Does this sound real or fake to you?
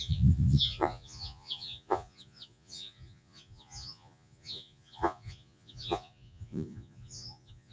fake